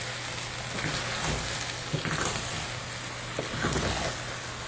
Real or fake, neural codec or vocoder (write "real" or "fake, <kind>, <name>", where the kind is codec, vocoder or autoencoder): real